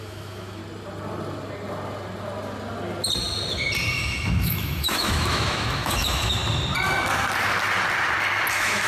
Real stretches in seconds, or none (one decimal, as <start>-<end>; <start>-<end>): 0.6-3.9; 6.4-8.5